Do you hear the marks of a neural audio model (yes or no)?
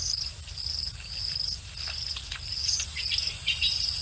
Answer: yes